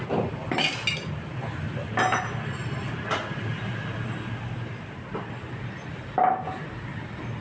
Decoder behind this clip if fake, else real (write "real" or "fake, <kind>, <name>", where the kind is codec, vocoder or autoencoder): real